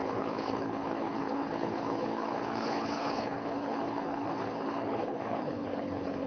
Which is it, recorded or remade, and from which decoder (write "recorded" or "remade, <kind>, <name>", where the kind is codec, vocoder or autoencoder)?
remade, codec, HILCodec